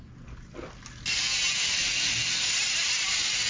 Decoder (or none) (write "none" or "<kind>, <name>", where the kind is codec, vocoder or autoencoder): none